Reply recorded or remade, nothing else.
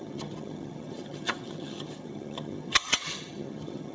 remade